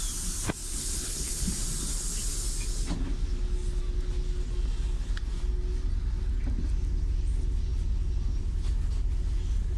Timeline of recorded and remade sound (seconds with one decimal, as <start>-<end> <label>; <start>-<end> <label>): 0.0-0.6 recorded; 0.6-1.5 remade; 1.5-9.8 recorded